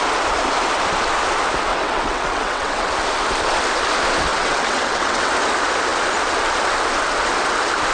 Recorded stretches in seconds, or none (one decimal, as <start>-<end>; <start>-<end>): 0.0-1.7; 2.9-4.3; 5.3-7.9